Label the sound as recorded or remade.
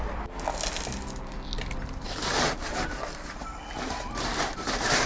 recorded